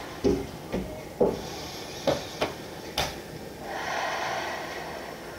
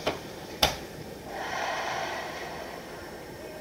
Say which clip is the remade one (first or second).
second